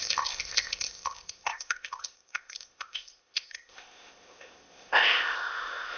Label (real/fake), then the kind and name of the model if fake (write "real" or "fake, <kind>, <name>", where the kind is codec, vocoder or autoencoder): fake, codec, ZipCodec